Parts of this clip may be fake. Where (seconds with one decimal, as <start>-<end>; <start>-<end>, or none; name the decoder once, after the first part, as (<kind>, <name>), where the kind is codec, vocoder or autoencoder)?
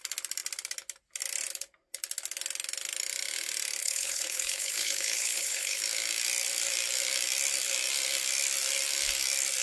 3.8-5.8 (codec, HILCodec)